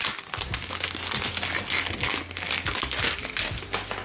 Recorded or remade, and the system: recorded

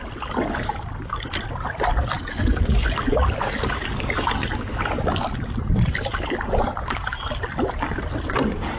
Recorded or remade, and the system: recorded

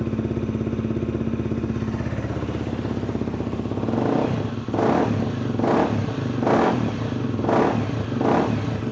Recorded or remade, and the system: recorded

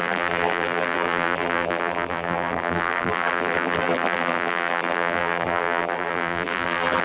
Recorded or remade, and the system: remade, vocoder, BigVGAN v2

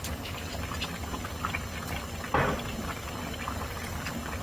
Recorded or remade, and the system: recorded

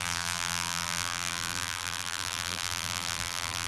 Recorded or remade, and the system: remade, vocoder, BigVGAN v2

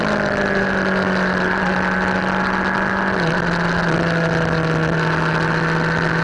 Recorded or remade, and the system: recorded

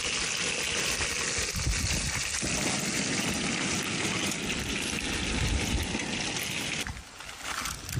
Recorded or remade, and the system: recorded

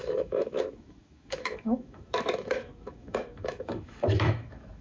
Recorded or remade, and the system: remade, autoencoder, DAC-VAE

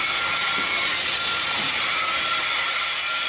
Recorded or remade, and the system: recorded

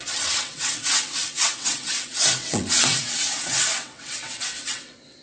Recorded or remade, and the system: remade, vocoder, WaveNeXt